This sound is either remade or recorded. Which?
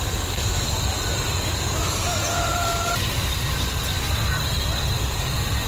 recorded